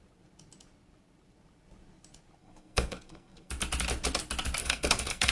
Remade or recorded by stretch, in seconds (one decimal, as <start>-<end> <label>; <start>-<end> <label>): 0.0-2.4 recorded; 2.4-3.5 remade; 3.5-4.6 recorded; 4.6-5.3 remade